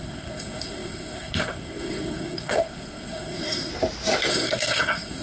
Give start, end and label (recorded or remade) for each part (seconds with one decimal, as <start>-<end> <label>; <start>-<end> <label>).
0.0-3.7 remade; 3.7-4.3 recorded; 4.3-5.2 remade